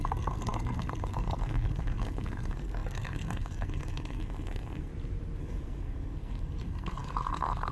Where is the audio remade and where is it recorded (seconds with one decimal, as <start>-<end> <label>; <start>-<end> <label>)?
0.0-4.9 remade; 4.9-5.4 recorded; 5.4-7.7 remade